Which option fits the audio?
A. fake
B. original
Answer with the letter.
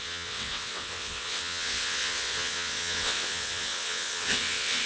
A